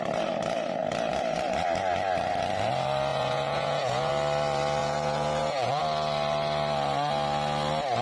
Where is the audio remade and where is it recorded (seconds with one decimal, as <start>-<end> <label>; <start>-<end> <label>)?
0.0-3.1 recorded; 3.1-4.1 remade; 4.1-4.8 recorded; 4.8-5.8 remade; 5.8-8.0 recorded